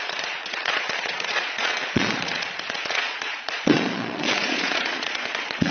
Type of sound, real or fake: fake